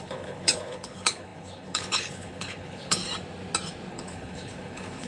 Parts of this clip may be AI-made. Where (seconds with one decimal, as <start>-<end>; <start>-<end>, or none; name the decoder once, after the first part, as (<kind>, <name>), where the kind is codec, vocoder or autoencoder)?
0.0-3.0 (codec, HILCodec); 3.9-5.1